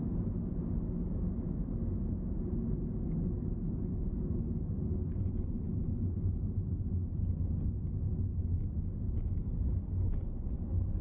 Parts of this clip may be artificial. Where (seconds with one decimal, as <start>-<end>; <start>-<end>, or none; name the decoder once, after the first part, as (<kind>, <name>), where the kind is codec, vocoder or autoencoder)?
none